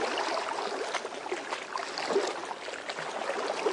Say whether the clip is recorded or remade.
recorded